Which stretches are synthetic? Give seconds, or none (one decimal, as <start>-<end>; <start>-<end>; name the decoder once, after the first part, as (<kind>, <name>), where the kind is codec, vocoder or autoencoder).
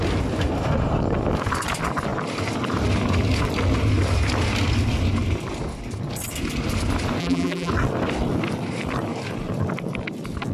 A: 7.2-7.7 (vocoder, BigVGAN v2)